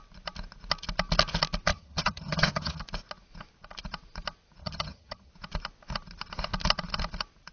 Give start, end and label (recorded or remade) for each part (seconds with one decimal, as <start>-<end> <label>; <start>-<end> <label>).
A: 0.0-1.7 recorded; 1.7-2.8 remade; 2.8-4.6 recorded; 4.6-5.3 remade; 5.3-7.5 recorded